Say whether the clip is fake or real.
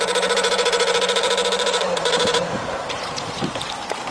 fake